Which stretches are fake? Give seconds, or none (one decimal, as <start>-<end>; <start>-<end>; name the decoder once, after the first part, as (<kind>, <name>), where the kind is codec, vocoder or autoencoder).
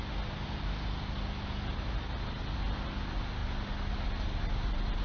none